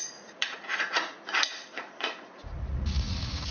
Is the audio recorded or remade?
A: remade